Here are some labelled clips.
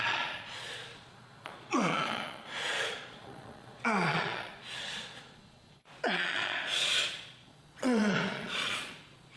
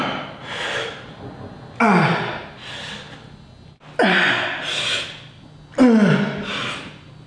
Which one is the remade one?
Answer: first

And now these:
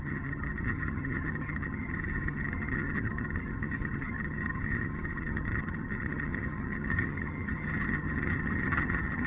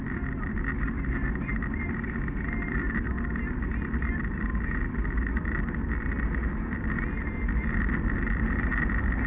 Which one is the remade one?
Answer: first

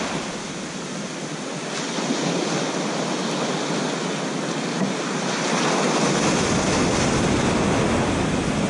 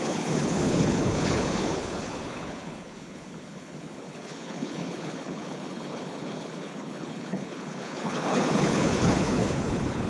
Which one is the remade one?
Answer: second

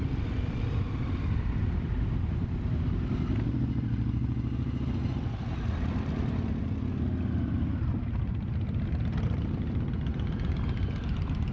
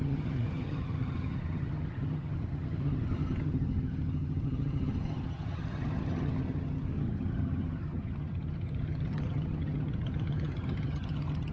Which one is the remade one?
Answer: second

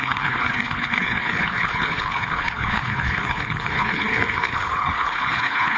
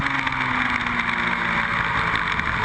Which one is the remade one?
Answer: first